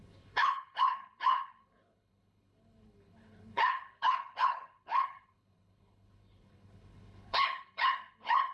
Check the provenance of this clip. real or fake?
fake